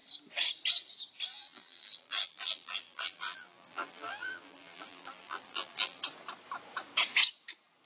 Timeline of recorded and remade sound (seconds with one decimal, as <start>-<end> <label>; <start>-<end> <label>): 0.0-1.3 recorded; 1.3-6.0 remade; 6.0-7.9 recorded